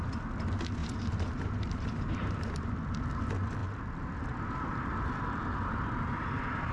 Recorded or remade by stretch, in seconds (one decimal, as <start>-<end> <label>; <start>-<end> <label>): 0.0-0.8 recorded; 0.8-2.7 remade; 2.7-6.7 recorded